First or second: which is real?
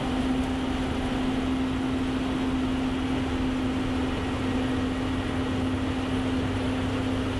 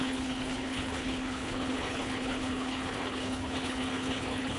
first